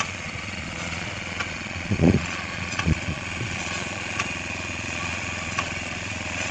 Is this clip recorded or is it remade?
remade